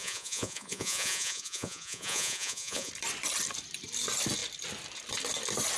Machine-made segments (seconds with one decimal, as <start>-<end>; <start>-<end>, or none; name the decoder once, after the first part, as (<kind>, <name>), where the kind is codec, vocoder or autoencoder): 0.0-2.9 (vocoder, Vocos)